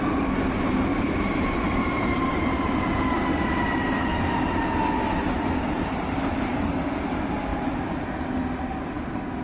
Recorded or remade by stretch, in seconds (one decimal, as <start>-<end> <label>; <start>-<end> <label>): 0.0-0.9 recorded; 0.9-3.2 remade; 3.2-4.1 recorded; 4.1-4.8 remade; 4.8-7.5 recorded; 7.5-8.0 remade; 8.0-9.4 recorded

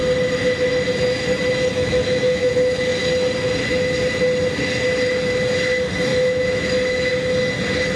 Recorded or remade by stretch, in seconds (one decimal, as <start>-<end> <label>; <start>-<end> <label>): 0.0-1.7 recorded; 1.7-2.5 remade; 2.5-6.1 recorded; 6.1-7.1 remade; 7.1-8.0 recorded

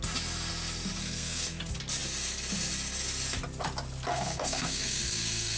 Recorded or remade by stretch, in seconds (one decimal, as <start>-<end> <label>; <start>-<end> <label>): 0.0-1.0 recorded; 1.0-1.6 remade; 1.6-4.1 recorded; 4.1-5.6 remade

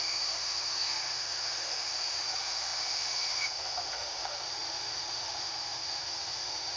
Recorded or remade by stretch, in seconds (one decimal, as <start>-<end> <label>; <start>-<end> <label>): 0.0-6.8 remade

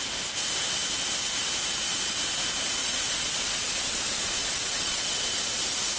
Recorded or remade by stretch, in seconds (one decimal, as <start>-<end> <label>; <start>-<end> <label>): 0.0-2.8 recorded; 2.8-5.6 remade; 5.6-6.0 recorded